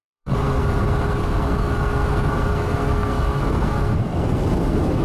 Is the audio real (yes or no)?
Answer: no